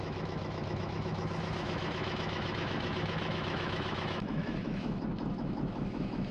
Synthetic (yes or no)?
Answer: yes